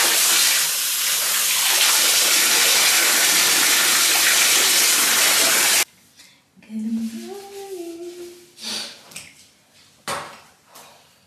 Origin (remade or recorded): recorded